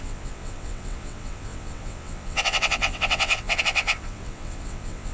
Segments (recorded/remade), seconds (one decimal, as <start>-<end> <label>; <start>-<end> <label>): 0.0-5.1 remade